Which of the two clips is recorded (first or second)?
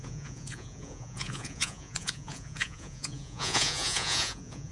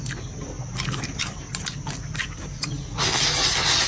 second